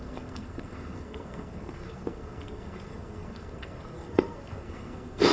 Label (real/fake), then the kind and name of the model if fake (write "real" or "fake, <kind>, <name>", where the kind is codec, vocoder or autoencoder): fake, codec, SNAC